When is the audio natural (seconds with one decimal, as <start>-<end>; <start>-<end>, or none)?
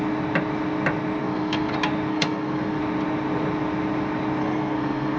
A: 0.0-1.2; 1.7-2.1; 2.8-4.4